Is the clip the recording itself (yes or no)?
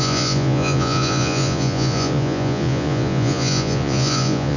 no